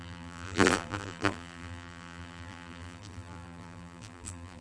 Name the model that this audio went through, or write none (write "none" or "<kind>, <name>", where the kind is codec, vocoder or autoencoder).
vocoder, BigVGAN v2